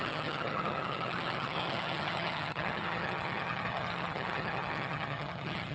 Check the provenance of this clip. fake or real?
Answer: fake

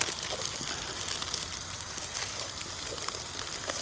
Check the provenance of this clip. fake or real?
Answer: real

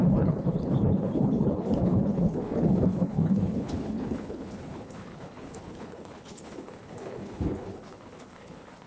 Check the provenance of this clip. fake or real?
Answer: fake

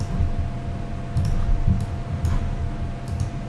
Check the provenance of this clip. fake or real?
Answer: real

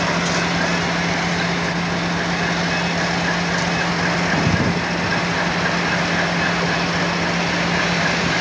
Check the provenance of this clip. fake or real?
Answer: real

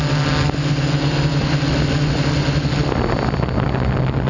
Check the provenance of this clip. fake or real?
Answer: real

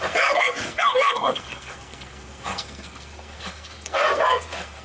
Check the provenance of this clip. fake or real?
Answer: fake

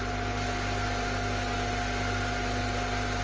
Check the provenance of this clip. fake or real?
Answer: real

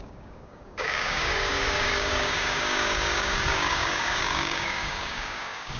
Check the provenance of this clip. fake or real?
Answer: fake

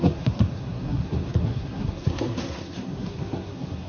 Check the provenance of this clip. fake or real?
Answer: fake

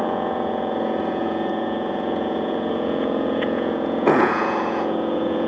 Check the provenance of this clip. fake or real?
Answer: fake